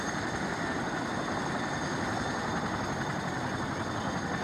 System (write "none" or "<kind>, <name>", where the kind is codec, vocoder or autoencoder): none